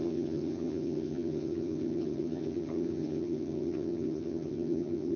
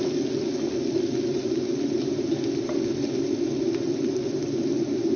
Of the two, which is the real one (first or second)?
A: second